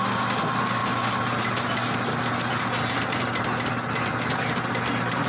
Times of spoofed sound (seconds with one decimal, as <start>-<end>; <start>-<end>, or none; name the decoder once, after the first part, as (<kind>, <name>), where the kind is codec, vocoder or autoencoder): none

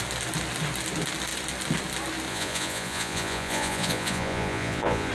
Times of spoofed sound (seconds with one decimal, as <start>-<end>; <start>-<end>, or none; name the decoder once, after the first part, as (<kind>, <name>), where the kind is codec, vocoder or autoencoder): 2.3-5.1 (vocoder, Vocos)

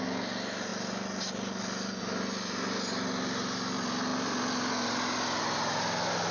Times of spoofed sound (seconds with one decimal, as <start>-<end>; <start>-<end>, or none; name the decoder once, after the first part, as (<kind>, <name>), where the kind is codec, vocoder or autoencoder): none

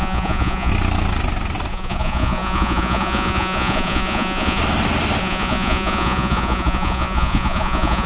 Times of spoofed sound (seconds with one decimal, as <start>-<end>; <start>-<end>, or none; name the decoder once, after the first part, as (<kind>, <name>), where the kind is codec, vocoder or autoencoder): 0.0-0.7 (vocoder, Vocos); 1.7-4.6; 5.2-8.1

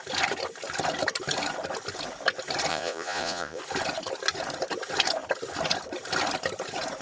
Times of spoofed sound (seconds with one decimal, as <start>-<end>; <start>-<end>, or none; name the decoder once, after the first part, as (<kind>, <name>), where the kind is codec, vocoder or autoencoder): 2.7-3.6 (vocoder, Vocos)